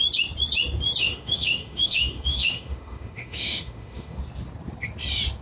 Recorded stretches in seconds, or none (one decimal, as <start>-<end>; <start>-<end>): 0.0-1.0; 4.2-5.4